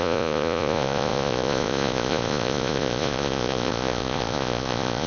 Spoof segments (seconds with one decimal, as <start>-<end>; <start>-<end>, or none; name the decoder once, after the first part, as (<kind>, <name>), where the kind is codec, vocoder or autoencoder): 0.0-5.1 (vocoder, Vocos)